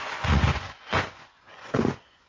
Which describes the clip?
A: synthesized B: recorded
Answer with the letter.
A